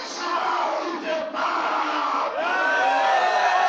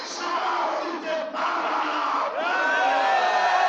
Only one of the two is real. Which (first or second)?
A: second